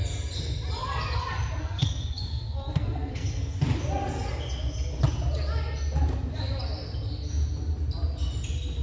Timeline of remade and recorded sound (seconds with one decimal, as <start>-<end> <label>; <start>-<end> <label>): 0.0-1.6 recorded; 1.6-3.6 remade; 3.6-8.8 recorded

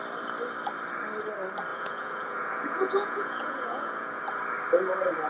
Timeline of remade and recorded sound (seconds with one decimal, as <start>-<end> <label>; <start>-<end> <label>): 0.0-1.7 recorded; 1.7-4.2 remade; 4.2-5.3 recorded